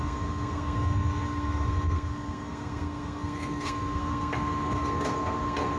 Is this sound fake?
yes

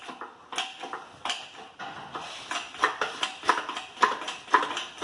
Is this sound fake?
no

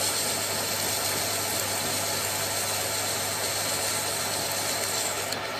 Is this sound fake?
no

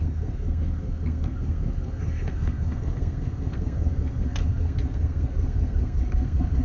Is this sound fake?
yes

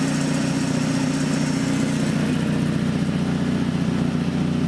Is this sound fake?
no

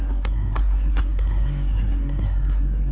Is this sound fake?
yes